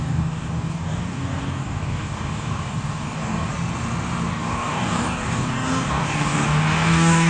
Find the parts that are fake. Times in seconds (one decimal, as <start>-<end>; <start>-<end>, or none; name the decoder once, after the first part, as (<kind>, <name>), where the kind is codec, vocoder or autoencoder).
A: 0.0-3.5 (codec, DAC); 4.3-7.3